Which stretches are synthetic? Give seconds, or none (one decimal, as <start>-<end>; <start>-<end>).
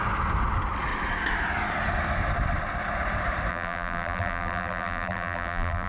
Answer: 3.5-5.9